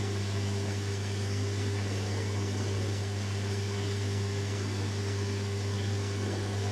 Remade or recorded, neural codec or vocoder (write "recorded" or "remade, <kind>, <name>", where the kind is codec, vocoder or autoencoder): remade, codec, SNAC